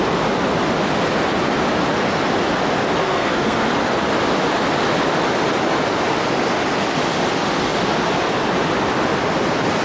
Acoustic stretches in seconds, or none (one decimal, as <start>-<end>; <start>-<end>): 0.0-3.0; 3.7-9.8